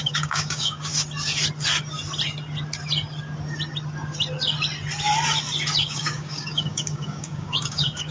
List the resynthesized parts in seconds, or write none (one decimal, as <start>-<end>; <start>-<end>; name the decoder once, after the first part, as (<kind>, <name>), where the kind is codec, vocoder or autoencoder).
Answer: 0.0-0.9 (codec, DAC); 5.8-8.1